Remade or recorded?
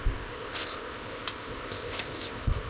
remade